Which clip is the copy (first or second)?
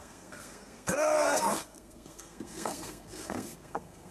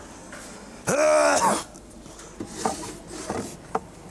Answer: first